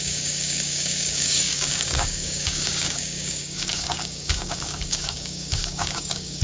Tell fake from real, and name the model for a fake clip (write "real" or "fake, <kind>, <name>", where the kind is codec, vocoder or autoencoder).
fake, codec, DAC